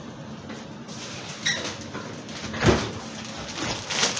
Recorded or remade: recorded